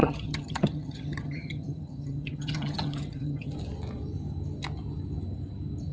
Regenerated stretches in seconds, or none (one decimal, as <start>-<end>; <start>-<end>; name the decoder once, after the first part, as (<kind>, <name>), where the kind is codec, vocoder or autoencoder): 0.0-3.5 (vocoder, HiFi-GAN)